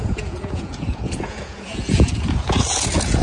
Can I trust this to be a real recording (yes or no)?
no